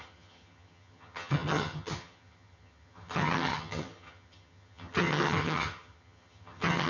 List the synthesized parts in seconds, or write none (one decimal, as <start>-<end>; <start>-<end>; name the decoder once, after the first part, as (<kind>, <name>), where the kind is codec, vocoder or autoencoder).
0.0-6.9 (vocoder, HiFi-GAN)